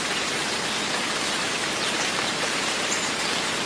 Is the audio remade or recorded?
recorded